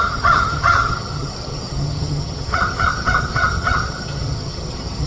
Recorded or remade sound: remade